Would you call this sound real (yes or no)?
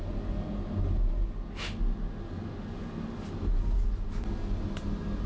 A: yes